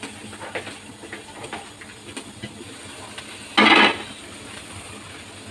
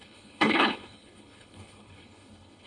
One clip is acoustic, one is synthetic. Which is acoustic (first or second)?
first